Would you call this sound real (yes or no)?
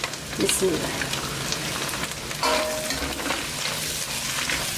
yes